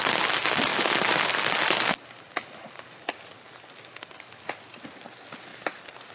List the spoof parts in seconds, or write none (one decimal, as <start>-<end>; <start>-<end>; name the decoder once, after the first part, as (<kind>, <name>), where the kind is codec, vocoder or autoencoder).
none